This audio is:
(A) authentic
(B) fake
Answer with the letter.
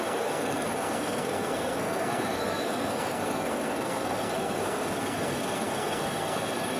B